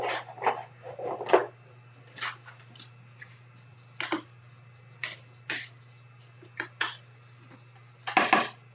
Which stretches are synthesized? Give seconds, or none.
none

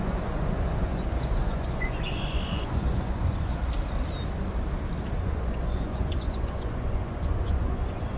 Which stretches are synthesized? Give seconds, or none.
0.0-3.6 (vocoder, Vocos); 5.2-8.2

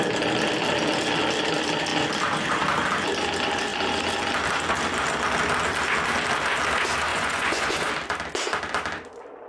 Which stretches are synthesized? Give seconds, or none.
7.1-7.9 (vocoder, Vocos)

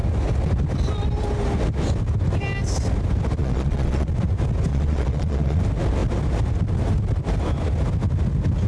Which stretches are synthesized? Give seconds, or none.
3.4-4.1 (vocoder, Vocos); 4.7-5.6